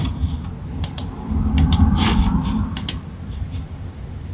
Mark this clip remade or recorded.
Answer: remade